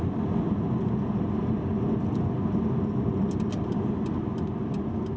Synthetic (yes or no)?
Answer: no